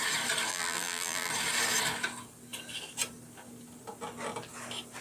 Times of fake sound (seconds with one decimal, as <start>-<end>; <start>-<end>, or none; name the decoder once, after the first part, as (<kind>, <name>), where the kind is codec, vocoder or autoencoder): 0.5-1.3 (vocoder, BigVGAN v2)